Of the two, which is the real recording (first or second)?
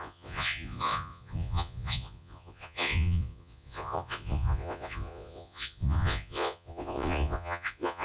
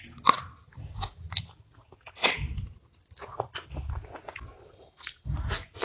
second